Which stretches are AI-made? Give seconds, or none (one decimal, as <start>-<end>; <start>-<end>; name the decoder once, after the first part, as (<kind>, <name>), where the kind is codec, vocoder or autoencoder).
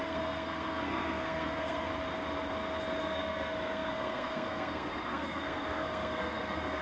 0.0-1.9 (codec, SNAC); 3.0-6.8